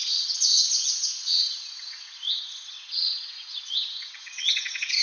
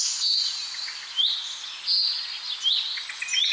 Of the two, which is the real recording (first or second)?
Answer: second